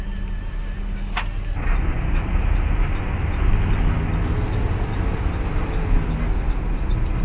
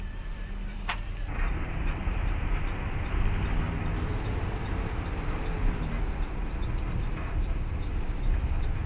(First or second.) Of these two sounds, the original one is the first